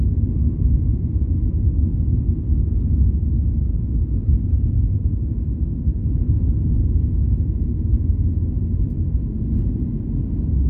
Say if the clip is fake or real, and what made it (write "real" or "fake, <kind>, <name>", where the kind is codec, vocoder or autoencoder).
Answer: real